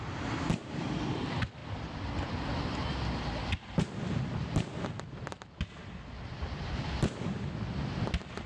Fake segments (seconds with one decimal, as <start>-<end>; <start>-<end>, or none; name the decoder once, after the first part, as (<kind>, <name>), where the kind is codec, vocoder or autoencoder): none